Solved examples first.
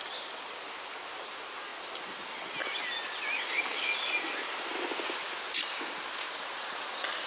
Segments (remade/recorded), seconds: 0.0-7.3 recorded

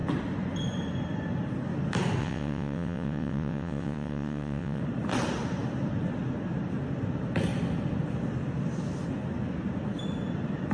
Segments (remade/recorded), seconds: 0.0-2.2 recorded; 2.2-4.8 remade; 4.8-10.7 recorded